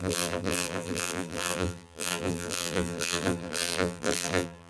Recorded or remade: remade